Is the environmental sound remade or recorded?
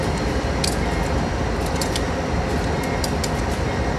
recorded